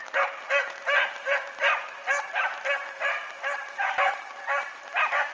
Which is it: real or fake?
real